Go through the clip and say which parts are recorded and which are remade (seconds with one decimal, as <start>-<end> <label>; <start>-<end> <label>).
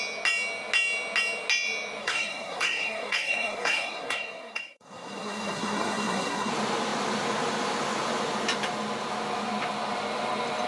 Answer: 0.0-2.0 recorded; 2.0-6.5 remade; 6.5-10.7 recorded